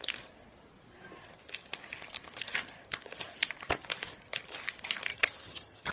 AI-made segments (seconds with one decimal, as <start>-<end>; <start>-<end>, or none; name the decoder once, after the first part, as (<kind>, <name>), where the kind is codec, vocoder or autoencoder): 5.1-5.9 (vocoder, HiFi-GAN)